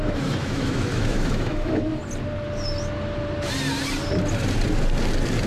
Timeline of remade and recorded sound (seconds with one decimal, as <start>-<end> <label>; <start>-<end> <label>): 0.0-2.0 remade; 2.0-5.5 recorded